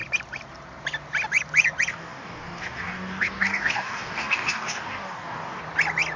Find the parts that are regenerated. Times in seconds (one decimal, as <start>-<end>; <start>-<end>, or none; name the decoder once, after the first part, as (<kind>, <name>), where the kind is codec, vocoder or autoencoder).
1.9-5.6 (codec, DAC)